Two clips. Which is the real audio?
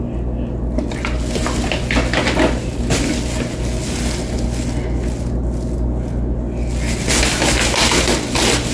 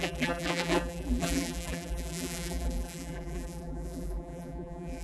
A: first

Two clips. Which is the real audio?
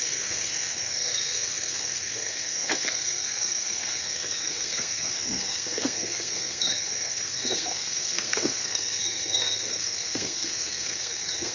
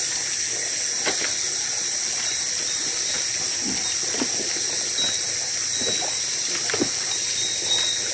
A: second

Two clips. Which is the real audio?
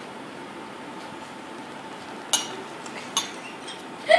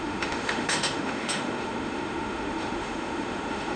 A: first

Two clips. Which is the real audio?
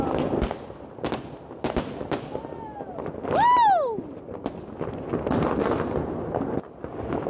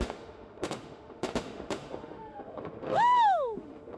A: first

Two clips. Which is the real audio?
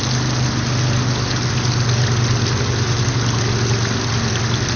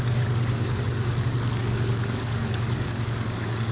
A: first